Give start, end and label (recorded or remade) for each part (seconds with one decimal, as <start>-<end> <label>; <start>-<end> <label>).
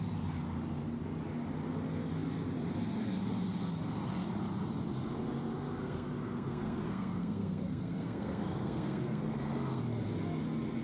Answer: 0.0-5.8 recorded; 5.8-9.8 remade; 9.8-10.8 recorded